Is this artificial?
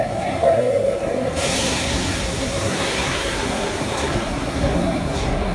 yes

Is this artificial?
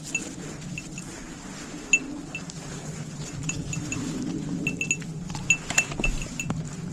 no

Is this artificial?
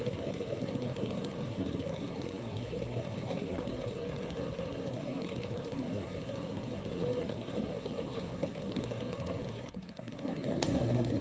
yes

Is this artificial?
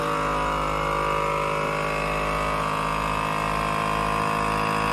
no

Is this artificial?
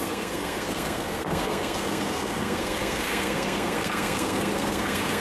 yes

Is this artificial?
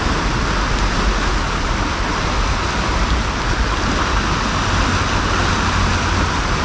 no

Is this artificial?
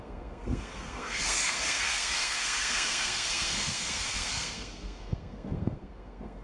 yes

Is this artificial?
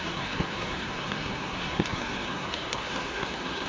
yes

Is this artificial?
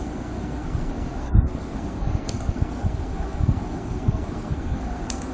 yes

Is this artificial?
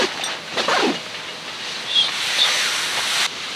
no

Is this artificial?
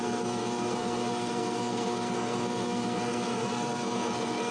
yes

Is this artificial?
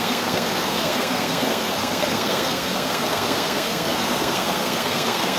yes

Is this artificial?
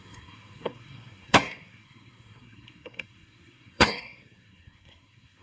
yes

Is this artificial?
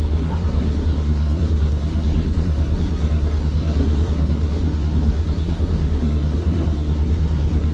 yes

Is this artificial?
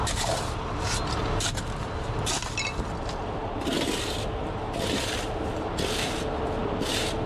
no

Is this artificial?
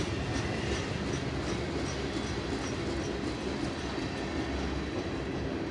no